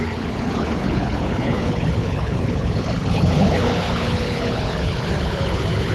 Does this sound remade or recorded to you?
remade